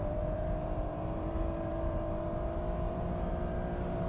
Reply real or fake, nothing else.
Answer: fake